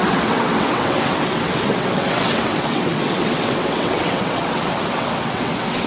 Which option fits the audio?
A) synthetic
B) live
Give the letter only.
A